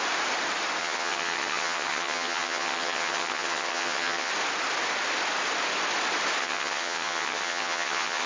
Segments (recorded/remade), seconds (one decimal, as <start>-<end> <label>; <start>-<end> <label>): 0.0-0.8 recorded; 0.8-4.3 remade; 4.3-6.4 recorded; 6.4-8.3 remade